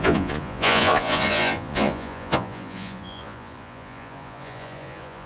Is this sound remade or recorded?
remade